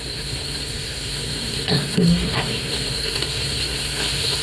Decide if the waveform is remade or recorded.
remade